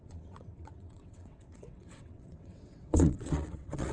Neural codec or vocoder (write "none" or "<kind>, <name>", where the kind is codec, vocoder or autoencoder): vocoder, WaveNeXt